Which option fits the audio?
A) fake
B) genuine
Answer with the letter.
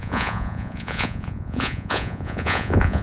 A